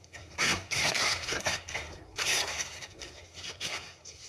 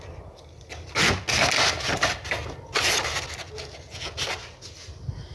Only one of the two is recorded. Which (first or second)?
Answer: second